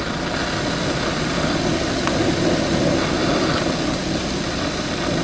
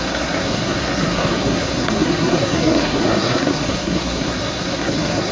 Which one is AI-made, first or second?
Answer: second